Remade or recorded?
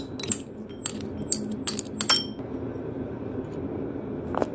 recorded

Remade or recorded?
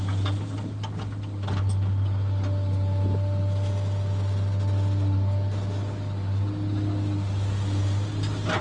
recorded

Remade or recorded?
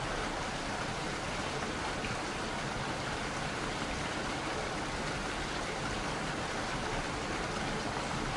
remade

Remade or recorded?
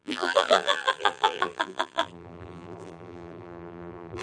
remade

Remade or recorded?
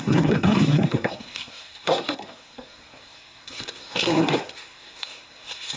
remade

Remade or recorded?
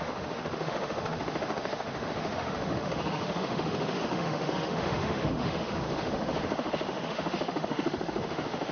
remade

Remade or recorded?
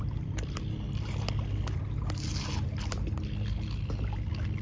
recorded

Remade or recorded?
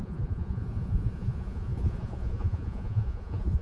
remade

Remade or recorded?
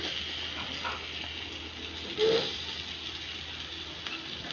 recorded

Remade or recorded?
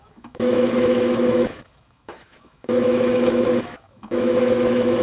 remade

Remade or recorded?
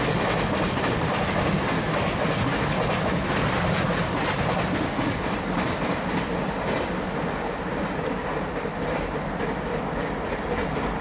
recorded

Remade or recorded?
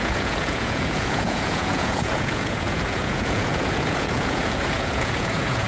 remade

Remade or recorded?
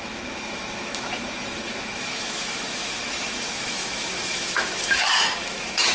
remade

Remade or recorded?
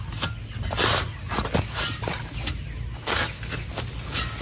recorded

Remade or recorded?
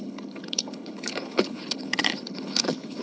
remade